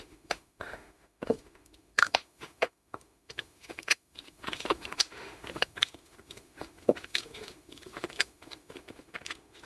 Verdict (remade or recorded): remade